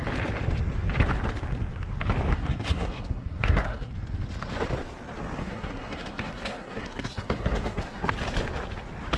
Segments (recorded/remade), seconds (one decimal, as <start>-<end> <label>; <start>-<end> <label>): 0.0-2.3 recorded; 2.3-3.9 remade; 3.9-5.4 recorded; 5.4-8.1 remade; 8.1-9.2 recorded